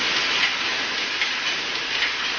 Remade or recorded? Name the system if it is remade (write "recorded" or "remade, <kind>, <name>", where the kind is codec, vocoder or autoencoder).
recorded